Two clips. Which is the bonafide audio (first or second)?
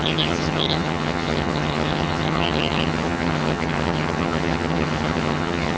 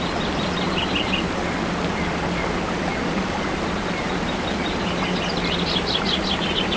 second